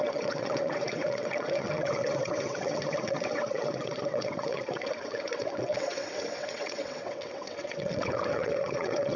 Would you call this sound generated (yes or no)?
yes